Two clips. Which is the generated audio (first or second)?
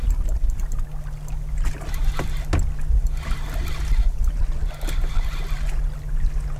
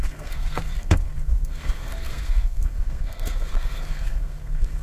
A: second